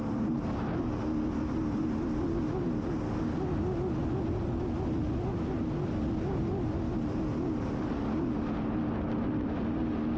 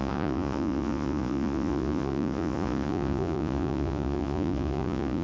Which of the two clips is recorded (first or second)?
first